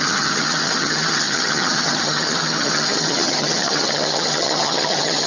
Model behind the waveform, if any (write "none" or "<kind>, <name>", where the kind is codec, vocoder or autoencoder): vocoder, HiFi-GAN